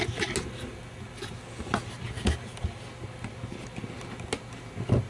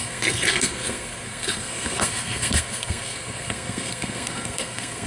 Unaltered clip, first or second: first